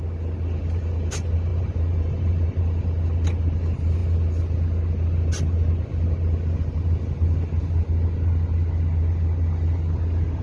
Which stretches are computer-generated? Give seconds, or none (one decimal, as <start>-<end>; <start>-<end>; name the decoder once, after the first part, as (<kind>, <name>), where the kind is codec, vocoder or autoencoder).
1.5-2.6 (vocoder, BigVGAN v2)